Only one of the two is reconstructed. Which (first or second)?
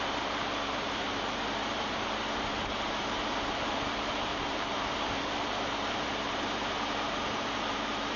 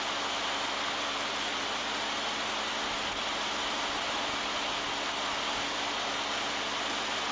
first